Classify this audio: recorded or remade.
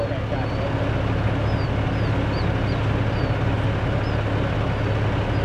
recorded